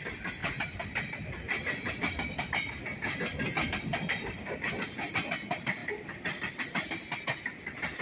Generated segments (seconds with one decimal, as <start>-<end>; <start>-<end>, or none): 0.4-2.7; 3.9-4.7; 5.8-6.5